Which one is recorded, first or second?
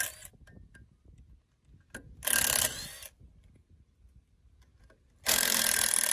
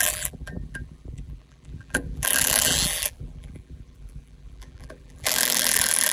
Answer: first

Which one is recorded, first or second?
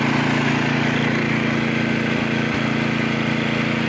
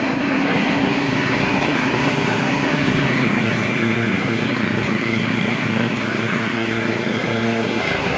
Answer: first